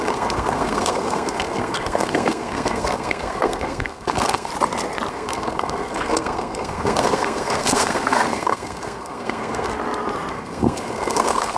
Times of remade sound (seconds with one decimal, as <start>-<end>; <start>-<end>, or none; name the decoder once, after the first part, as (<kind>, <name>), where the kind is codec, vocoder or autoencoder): 0.0-4.5 (codec, SNAC); 5.1-9.7; 10.3-11.6